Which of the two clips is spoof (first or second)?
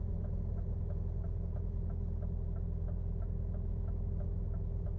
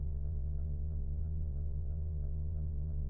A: second